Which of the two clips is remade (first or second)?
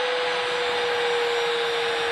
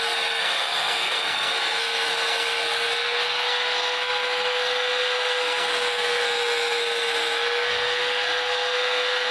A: second